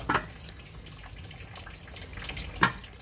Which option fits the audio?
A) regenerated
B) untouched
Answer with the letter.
B